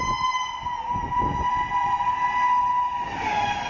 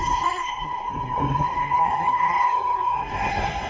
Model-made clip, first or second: second